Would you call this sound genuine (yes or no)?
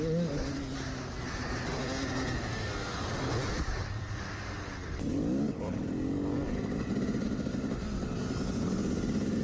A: yes